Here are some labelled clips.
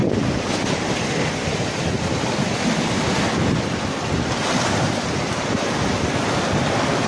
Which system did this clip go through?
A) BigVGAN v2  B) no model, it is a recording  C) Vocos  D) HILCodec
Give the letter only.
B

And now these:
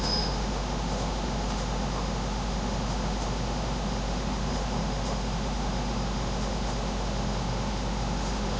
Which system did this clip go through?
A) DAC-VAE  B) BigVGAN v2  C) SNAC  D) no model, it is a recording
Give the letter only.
A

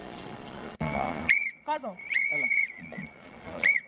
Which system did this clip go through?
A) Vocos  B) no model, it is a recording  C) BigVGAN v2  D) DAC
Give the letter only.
A